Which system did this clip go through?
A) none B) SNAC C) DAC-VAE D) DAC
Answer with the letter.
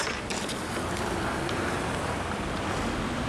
A